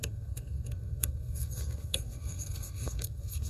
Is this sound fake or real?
fake